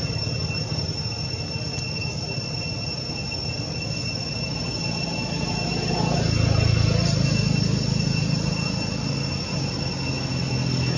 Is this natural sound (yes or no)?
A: yes